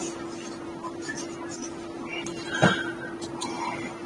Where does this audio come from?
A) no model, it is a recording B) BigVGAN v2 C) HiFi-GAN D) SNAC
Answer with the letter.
A